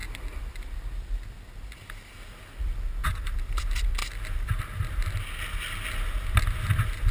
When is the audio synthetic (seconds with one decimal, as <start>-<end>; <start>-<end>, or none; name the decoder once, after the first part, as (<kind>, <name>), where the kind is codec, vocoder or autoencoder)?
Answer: none